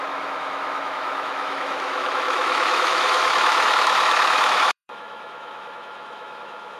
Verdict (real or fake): fake